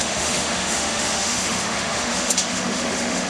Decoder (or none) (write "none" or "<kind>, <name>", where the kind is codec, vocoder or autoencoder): autoencoder, DAC-VAE